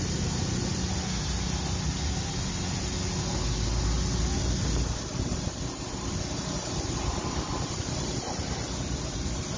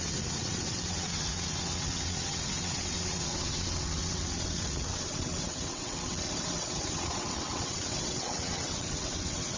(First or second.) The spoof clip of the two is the second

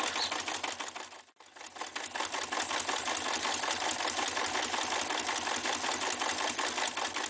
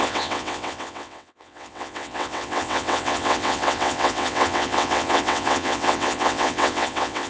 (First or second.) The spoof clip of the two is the second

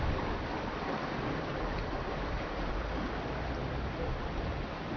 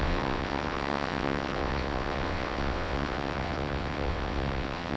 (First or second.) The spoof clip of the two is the second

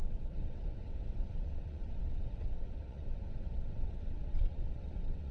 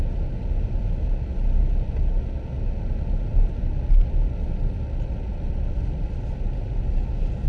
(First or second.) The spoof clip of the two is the first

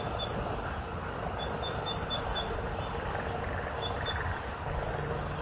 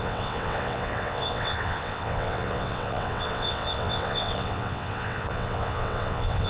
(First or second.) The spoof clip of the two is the second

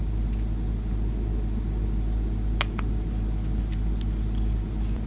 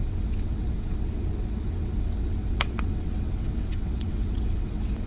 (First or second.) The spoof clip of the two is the second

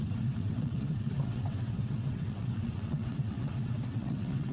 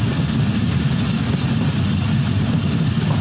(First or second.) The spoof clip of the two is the first